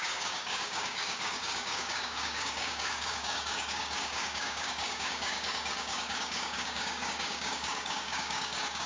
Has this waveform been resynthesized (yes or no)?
yes